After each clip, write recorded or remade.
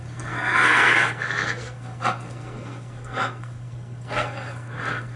remade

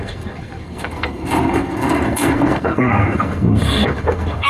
remade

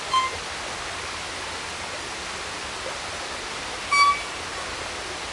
recorded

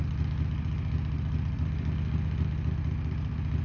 recorded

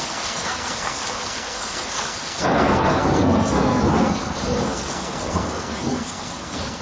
remade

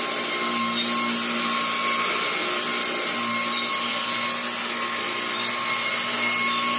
recorded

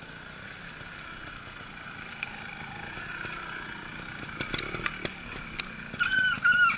recorded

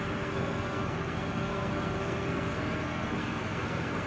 remade